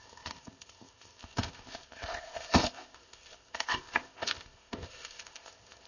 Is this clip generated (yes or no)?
yes